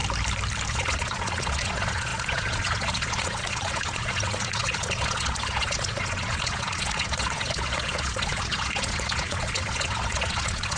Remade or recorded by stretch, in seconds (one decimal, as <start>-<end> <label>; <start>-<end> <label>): 0.0-0.7 recorded; 0.7-10.8 remade